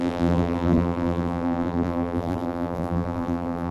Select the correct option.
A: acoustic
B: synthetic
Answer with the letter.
B